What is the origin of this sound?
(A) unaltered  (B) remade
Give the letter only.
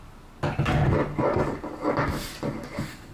A